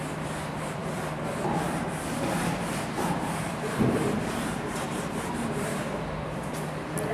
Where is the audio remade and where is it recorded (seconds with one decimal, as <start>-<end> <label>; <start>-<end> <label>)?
0.0-2.4 recorded; 2.4-6.5 remade; 6.5-7.1 recorded